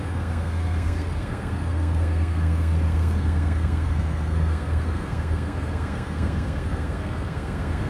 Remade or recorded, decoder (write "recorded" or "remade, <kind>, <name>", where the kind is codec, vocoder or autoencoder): remade, codec, SNAC